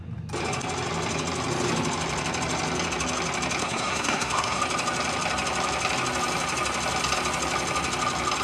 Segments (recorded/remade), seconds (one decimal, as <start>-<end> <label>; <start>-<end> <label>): 0.0-3.6 recorded; 3.6-4.6 remade; 4.6-8.4 recorded